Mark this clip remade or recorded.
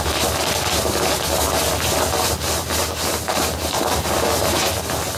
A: recorded